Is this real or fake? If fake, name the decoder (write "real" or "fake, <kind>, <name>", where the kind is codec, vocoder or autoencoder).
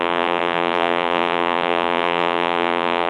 fake, vocoder, BigVGAN v2